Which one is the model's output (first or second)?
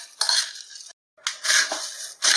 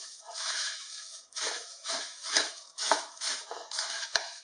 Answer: second